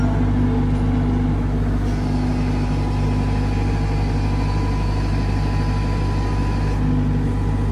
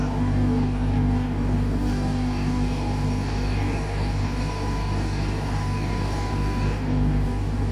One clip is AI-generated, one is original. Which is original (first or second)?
first